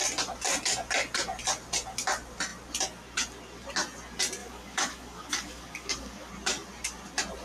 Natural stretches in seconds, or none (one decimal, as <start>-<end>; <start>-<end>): 0.0-4.4; 6.3-7.4